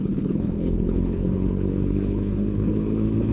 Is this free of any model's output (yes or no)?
no